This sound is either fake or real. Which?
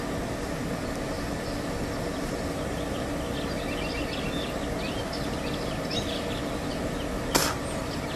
real